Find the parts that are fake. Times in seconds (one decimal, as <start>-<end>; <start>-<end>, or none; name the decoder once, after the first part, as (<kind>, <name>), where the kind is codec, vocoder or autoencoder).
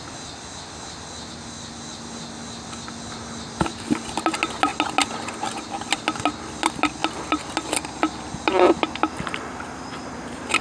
none